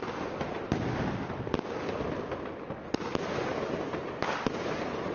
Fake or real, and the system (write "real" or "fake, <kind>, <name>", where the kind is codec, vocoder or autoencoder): real